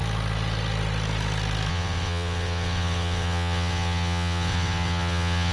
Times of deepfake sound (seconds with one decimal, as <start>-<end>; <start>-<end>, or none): 1.7-5.5